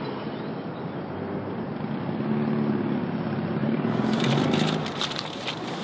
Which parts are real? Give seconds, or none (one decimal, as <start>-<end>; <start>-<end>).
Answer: 0.0-3.6; 4.3-5.8